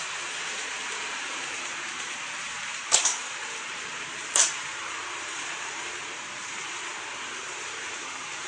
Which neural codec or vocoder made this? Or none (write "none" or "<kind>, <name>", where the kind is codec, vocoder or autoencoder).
vocoder, BigVGAN v2